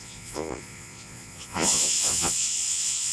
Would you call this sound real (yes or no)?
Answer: no